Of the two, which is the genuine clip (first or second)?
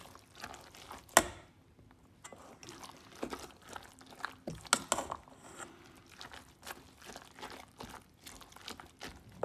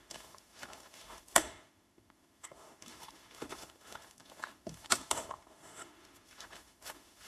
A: first